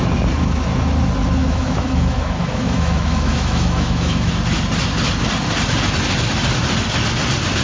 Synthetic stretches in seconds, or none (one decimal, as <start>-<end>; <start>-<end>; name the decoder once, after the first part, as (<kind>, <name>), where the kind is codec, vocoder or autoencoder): 1.4-4.3 (autoencoder, DAC-VAE)